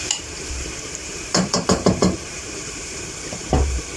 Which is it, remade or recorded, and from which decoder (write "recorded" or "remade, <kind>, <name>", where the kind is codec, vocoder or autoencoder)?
remade, vocoder, BigVGAN v2